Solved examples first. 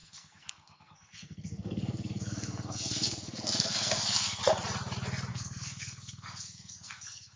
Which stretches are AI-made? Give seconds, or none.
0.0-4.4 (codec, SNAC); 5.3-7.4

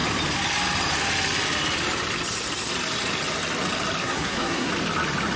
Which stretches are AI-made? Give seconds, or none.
4.0-4.7 (codec, SNAC)

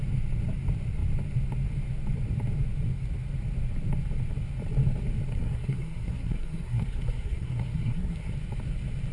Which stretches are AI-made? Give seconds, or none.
5.3-8.3 (codec, SNAC)

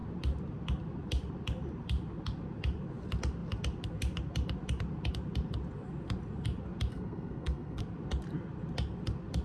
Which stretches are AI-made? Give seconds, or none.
6.9-7.8 (codec, SNAC)

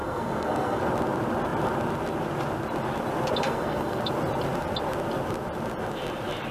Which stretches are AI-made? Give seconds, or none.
0.0-0.8 (codec, SNAC); 3.4-4.0

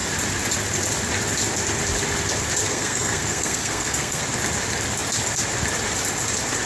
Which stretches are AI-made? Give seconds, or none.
2.7-4.2 (codec, SNAC)